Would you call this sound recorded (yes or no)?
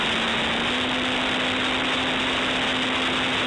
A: yes